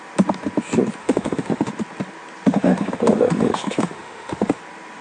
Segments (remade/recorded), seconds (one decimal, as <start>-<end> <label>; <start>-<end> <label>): 0.0-1.0 recorded; 1.0-1.7 remade; 1.7-2.5 recorded; 2.5-4.6 remade; 4.6-5.0 recorded